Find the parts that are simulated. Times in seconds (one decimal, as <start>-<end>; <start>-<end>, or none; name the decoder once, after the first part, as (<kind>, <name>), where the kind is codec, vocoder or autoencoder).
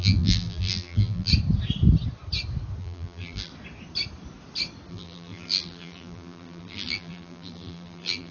0.0-1.3 (vocoder, BigVGAN v2); 2.8-3.5; 4.9-8.3